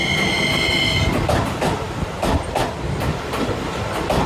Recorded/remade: recorded